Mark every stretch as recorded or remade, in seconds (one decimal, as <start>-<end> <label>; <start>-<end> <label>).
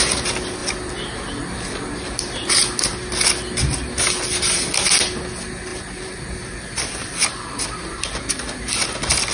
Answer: 0.0-5.7 recorded; 5.7-8.0 remade; 8.0-9.3 recorded